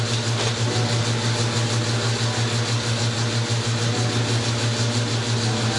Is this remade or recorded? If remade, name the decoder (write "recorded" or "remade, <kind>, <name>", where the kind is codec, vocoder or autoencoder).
recorded